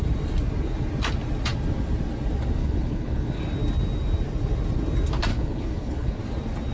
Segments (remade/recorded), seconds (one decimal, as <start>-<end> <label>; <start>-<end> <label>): 0.0-2.6 recorded; 2.6-3.4 remade; 3.4-5.3 recorded; 5.3-6.2 remade; 6.2-6.7 recorded